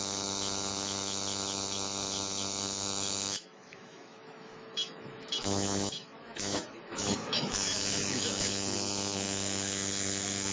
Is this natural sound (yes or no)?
no